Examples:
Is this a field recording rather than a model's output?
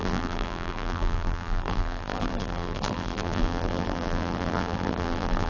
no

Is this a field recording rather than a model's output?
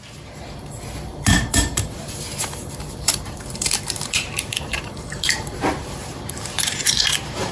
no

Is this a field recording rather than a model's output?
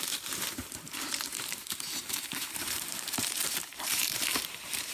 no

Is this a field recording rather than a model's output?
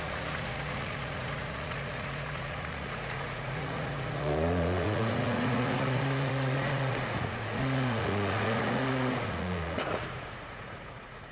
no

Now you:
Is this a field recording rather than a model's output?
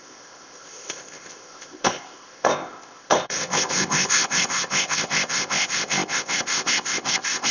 no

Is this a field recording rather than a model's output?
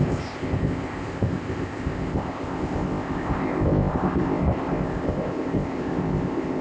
no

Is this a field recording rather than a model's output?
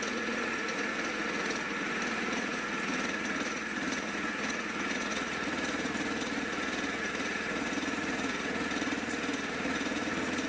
no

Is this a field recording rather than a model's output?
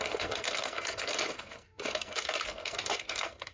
no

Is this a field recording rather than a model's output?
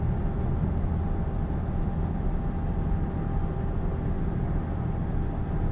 yes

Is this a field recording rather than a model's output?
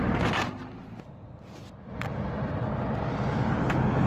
yes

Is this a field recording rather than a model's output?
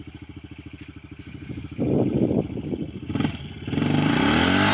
yes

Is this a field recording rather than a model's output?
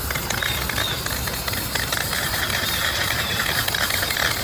yes